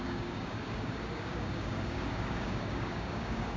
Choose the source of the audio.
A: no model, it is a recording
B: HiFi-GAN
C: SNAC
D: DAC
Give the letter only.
D